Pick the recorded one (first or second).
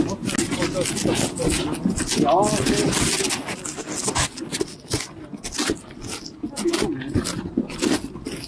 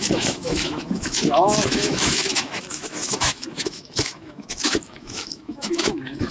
first